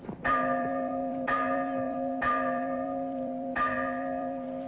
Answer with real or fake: fake